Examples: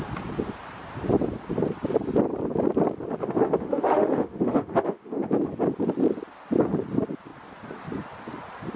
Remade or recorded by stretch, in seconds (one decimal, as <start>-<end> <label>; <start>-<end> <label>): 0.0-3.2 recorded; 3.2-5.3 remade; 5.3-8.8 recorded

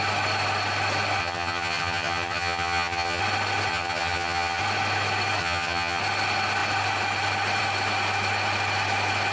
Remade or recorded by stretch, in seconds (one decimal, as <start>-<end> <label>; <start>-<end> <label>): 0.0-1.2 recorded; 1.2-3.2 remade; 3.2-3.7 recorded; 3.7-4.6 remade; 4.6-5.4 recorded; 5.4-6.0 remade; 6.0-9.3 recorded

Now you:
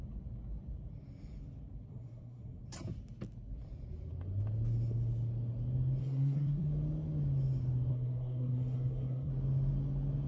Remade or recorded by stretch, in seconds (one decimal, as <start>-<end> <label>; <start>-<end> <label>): 0.0-1.9 recorded; 1.9-2.6 remade; 2.6-6.0 recorded; 6.0-6.7 remade; 6.7-7.9 recorded; 7.9-9.3 remade; 9.3-10.3 recorded

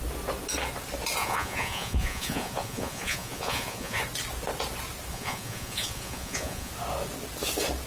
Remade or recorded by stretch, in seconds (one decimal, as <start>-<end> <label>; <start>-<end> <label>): 0.0-1.2 recorded; 1.2-4.0 remade; 4.0-5.1 recorded; 5.1-6.7 remade; 6.7-7.9 recorded

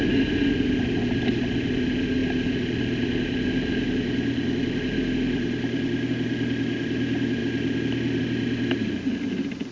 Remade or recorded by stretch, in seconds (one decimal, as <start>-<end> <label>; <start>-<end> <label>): 0.0-9.7 recorded

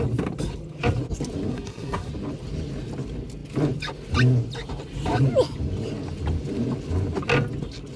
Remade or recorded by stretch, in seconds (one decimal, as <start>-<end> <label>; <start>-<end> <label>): 0.0-1.5 recorded; 1.5-2.1 remade; 2.1-8.0 recorded

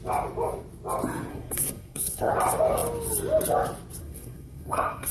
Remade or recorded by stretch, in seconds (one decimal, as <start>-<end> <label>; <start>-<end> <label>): 0.0-1.3 recorded; 1.3-2.3 remade; 2.3-4.0 recorded; 4.0-5.1 remade

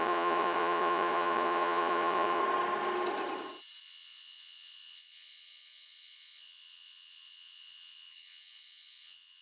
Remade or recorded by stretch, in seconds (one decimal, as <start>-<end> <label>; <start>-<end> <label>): 0.0-2.4 remade; 2.4-3.8 recorded; 3.8-9.4 remade